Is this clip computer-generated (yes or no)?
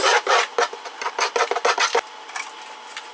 no